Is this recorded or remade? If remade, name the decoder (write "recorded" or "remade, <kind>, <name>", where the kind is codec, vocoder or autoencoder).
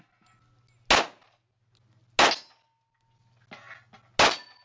recorded